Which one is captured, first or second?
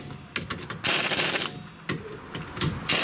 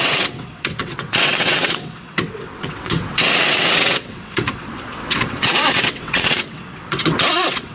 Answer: first